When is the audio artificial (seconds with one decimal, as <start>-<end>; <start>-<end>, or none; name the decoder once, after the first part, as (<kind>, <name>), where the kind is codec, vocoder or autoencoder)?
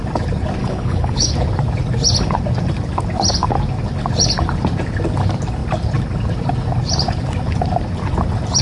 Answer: 0.6-1.3 (codec, HILCodec)